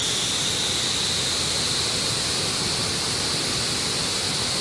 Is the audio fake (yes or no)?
no